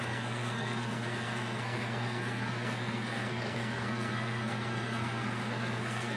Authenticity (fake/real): fake